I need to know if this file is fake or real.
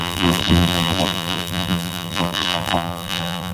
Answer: fake